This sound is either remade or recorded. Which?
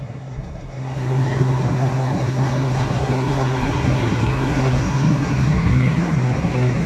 remade